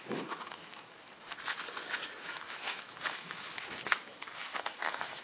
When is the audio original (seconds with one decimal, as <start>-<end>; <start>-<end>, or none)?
1.1-2.2